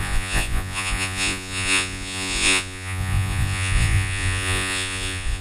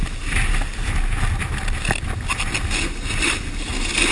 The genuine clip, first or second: second